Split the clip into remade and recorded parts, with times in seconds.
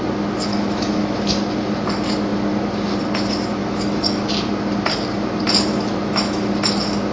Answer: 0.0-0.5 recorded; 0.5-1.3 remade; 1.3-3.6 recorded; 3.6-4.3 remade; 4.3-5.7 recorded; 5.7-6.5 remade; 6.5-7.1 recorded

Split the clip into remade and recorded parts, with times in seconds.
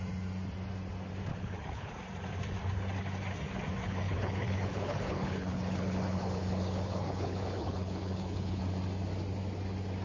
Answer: 0.0-1.3 recorded; 1.3-1.9 remade; 1.9-3.8 recorded; 3.8-8.6 remade; 8.6-10.0 recorded